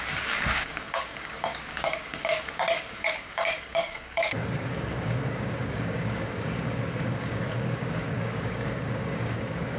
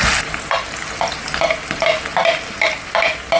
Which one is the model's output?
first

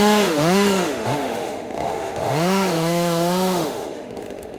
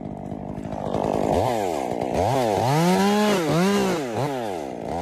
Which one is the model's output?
first